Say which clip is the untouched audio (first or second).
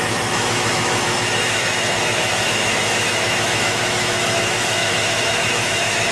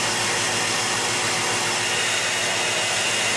second